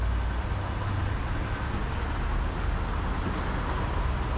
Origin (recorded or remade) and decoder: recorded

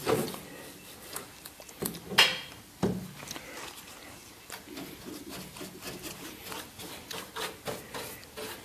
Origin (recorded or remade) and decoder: recorded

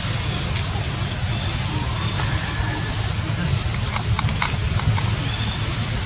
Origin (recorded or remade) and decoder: recorded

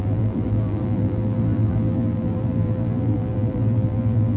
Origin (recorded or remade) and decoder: remade, vocoder, BigVGAN v2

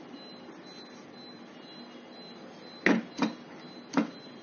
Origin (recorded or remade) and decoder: recorded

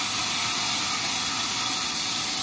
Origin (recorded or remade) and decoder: recorded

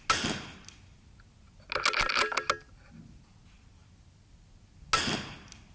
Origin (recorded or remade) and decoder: recorded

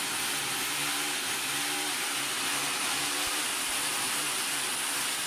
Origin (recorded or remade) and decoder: remade, vocoder, BigVGAN v2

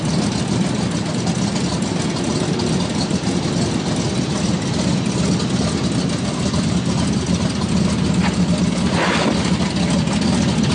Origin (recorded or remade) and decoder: recorded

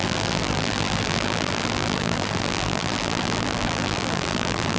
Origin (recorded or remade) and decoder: remade, vocoder, BigVGAN v2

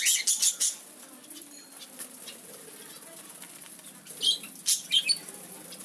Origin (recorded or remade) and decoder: recorded